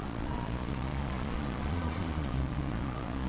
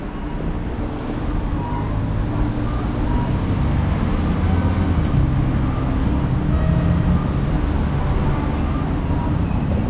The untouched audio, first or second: second